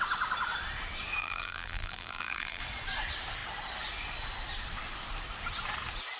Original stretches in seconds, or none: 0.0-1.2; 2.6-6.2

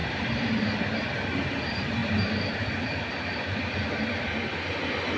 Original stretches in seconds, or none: 0.8-2.0

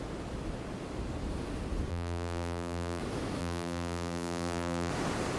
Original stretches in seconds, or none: 0.0-1.9; 3.0-3.4; 4.9-5.4